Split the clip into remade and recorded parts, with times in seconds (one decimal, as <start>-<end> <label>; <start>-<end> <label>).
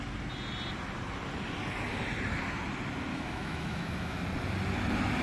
0.0-3.1 recorded; 3.1-4.2 remade; 4.2-5.2 recorded